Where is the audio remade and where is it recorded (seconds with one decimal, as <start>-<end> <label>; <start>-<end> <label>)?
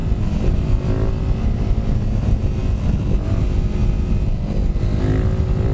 0.0-1.2 remade; 1.2-5.7 recorded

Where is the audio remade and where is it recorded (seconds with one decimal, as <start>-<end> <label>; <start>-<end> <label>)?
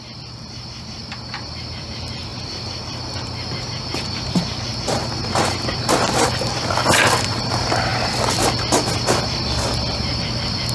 0.0-10.7 recorded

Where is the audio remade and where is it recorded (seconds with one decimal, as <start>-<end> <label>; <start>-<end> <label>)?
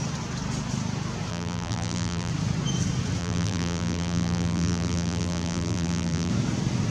0.0-1.3 recorded; 1.3-2.3 remade; 2.3-3.2 recorded; 3.2-6.3 remade; 6.3-6.9 recorded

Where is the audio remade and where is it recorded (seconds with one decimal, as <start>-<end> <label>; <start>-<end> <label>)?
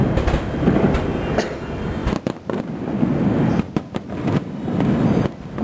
0.0-2.0 recorded; 2.0-2.6 remade; 2.6-5.6 recorded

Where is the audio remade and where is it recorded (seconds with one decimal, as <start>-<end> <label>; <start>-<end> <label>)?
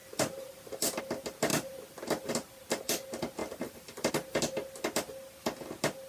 0.0-1.0 remade; 1.0-1.5 recorded; 1.5-2.3 remade; 2.3-3.4 recorded; 3.4-4.1 remade; 4.1-6.1 recorded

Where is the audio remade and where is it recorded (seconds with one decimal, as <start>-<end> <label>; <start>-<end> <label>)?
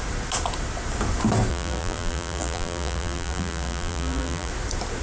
0.0-1.5 recorded; 1.5-4.5 remade; 4.5-5.0 recorded